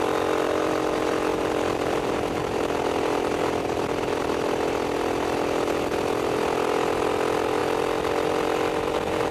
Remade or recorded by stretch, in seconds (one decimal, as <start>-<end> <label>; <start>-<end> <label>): 0.0-1.3 recorded; 1.3-4.3 remade; 4.3-9.3 recorded